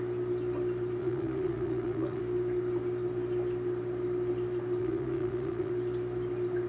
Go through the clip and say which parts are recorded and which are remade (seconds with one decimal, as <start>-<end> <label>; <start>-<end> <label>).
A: 0.0-1.0 recorded; 1.0-2.2 remade; 2.2-4.8 recorded; 4.8-5.7 remade; 5.7-6.7 recorded